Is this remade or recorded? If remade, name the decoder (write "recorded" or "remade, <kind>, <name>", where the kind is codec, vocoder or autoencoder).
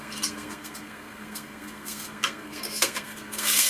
remade, codec, SNAC